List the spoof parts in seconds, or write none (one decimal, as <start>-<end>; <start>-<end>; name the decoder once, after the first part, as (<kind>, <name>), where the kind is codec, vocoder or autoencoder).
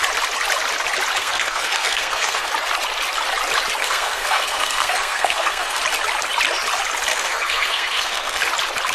1.2-2.5 (codec, SNAC); 3.8-5.8; 7.1-8.4